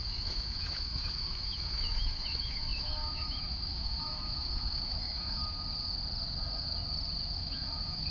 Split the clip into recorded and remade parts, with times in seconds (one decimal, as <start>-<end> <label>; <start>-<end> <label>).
0.0-5.4 remade; 5.4-7.4 recorded; 7.4-8.1 remade